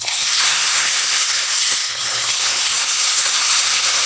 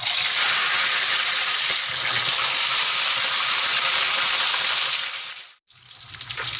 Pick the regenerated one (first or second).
first